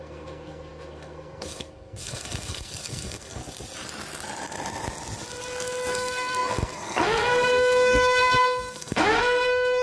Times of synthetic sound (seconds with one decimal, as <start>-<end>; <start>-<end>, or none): 0.0-3.4; 5.9-9.8